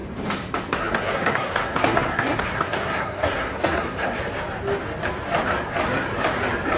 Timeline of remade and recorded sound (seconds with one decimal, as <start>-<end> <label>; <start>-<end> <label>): 0.0-0.7 recorded; 0.7-4.2 remade; 4.2-6.8 recorded